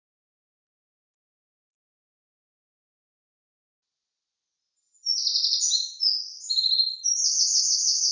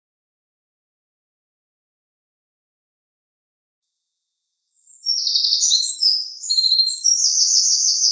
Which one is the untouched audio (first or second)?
first